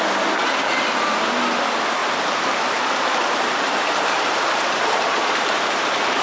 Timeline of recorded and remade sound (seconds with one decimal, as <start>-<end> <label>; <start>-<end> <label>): 0.0-2.0 recorded; 2.0-5.7 remade; 5.7-6.2 recorded